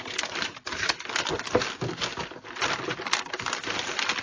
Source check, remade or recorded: recorded